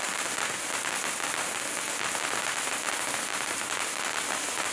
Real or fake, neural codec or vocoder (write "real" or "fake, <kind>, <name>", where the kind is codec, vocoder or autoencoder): real